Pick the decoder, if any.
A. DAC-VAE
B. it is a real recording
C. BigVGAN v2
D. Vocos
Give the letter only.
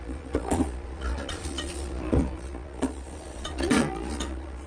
D